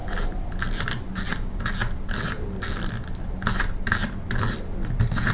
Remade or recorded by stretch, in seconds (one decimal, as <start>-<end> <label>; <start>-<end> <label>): 0.0-5.3 recorded